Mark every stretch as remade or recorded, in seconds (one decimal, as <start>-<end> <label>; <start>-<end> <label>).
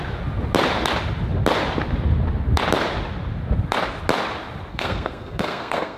0.0-4.7 recorded; 4.7-6.0 remade